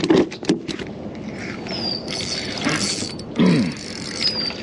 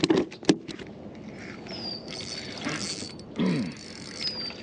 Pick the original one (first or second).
second